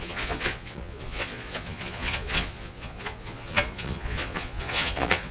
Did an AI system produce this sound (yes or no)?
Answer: yes